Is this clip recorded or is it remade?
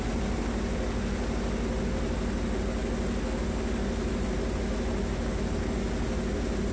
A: recorded